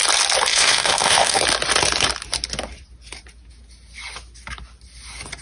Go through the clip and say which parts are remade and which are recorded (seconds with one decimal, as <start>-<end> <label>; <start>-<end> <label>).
0.0-0.5 recorded; 0.5-1.4 remade; 1.4-5.4 recorded